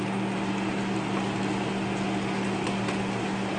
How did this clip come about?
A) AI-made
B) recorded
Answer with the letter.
B